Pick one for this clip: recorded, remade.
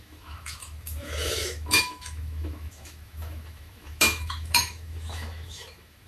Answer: remade